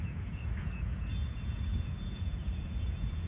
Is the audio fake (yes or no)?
yes